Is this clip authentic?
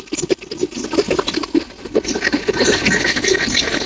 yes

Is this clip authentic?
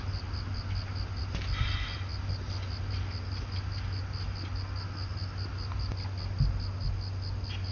yes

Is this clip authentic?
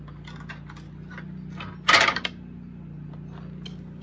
yes